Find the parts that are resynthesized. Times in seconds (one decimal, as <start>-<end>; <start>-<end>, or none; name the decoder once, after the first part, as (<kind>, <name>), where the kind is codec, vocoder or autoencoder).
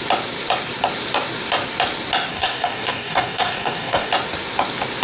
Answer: 2.3-4.1 (codec, DAC)